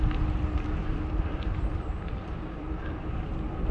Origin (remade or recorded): remade